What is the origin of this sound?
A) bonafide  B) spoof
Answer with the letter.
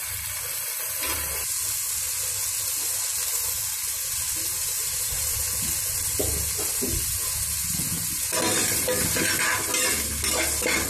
A